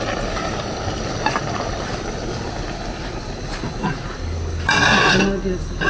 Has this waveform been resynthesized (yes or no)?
no